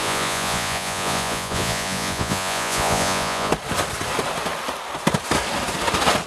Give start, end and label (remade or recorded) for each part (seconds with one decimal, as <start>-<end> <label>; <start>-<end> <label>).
0.0-3.5 remade; 3.5-6.3 recorded